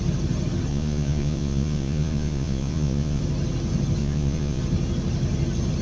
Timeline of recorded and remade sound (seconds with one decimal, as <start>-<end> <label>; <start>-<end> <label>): 0.0-0.7 recorded; 0.7-3.2 remade; 3.2-4.0 recorded; 4.0-4.6 remade; 4.6-5.8 recorded